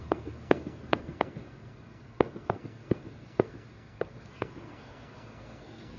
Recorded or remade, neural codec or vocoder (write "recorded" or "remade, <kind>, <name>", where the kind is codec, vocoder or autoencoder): remade, codec, SNAC